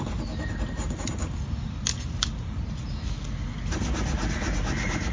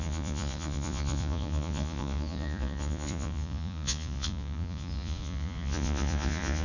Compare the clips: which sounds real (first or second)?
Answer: first